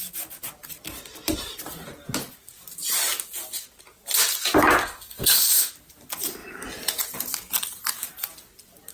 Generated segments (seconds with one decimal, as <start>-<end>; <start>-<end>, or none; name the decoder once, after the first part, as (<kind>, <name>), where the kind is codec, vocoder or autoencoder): 4.8-5.7 (codec, DAC)